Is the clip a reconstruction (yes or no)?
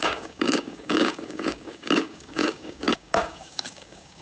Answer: yes